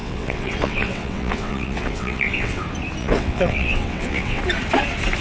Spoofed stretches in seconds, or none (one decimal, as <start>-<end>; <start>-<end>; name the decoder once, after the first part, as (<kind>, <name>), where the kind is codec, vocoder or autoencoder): 0.0-2.6 (vocoder, WaveNeXt); 3.0-4.4